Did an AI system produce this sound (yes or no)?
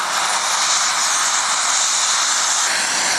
no